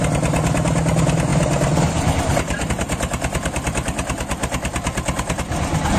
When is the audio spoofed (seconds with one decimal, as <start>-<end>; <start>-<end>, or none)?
4.4-5.4